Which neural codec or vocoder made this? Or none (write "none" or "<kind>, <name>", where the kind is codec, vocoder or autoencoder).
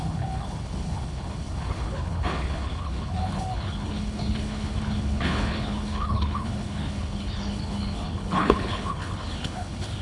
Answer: codec, HILCodec